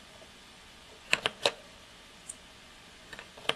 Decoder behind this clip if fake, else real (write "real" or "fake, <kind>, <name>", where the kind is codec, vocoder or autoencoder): fake, vocoder, Vocos